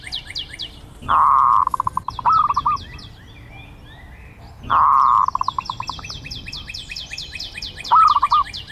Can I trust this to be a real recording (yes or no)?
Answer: yes